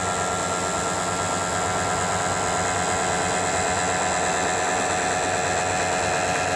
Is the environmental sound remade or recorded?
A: recorded